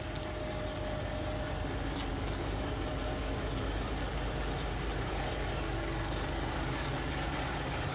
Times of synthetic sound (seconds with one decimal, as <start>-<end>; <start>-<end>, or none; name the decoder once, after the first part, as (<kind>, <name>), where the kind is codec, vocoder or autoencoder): 2.1-3.9 (codec, DAC); 5.1-7.1